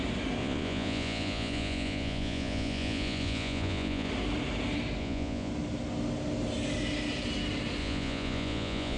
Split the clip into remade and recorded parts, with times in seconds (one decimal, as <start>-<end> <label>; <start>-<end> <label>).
0.0-0.4 recorded; 0.4-4.1 remade; 4.1-5.0 recorded; 5.0-5.5 remade; 5.5-7.8 recorded; 7.8-9.0 remade